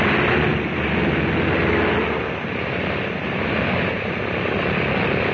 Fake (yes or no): no